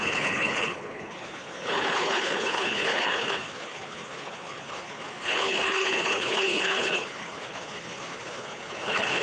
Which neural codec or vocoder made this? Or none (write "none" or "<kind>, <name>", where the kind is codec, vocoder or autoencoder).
codec, HILCodec